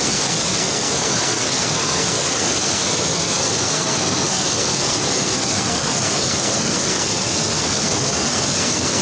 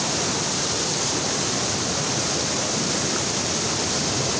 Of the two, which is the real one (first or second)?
second